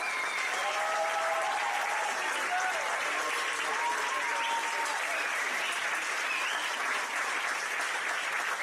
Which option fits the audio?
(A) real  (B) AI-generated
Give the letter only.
A